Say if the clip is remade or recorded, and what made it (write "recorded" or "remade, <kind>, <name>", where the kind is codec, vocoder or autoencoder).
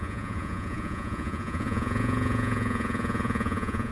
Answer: remade, vocoder, Vocos